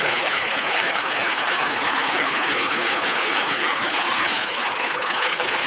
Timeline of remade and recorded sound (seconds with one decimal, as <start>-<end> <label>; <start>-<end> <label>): 0.0-5.7 remade